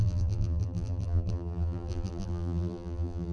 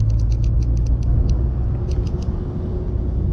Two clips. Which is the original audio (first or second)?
second